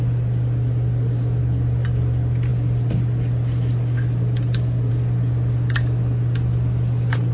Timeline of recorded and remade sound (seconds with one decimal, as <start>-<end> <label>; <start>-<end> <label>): 0.0-7.3 recorded